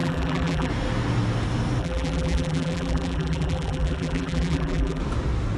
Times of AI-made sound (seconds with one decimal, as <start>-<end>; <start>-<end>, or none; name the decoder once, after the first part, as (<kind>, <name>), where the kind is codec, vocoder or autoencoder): 0.0-0.7 (vocoder, BigVGAN v2); 1.8-5.0